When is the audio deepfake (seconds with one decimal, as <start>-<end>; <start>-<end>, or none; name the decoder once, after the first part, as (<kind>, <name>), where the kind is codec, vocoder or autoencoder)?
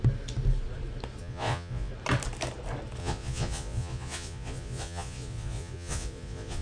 1.2-1.9 (vocoder, Vocos); 3.0-6.6